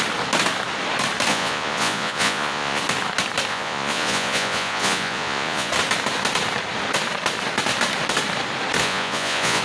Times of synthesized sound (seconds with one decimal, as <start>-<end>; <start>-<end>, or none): 1.3-2.8; 3.5-5.7; 8.8-9.6